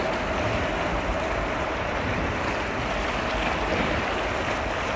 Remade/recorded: recorded